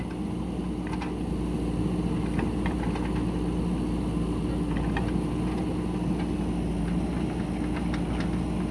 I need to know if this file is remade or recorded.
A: recorded